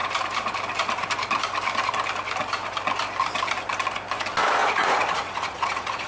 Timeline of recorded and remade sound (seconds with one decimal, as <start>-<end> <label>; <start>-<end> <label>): 0.0-4.6 recorded; 4.6-6.1 remade